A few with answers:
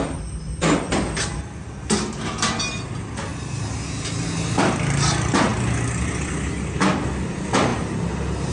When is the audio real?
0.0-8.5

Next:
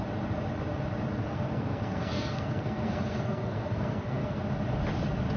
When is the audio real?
0.0-1.2; 4.4-5.4

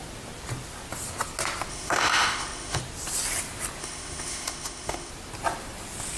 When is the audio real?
0.0-1.7; 2.8-3.8; 5.1-6.2

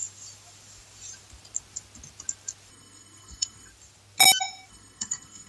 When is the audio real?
0.0-2.7; 3.7-4.7

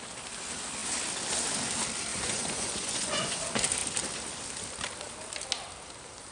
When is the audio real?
0.0-2.1; 3.4-6.3

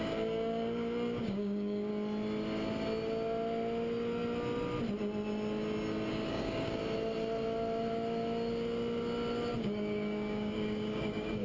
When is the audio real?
1.9-6.1; 6.8-9.5

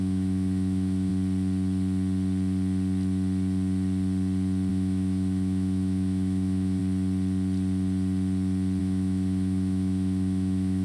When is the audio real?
1.1-4.7; 6.8-8.8